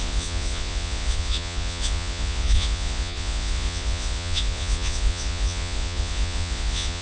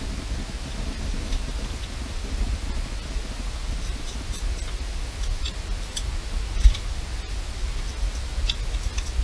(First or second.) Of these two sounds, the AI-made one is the first